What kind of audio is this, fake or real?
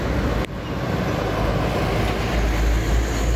real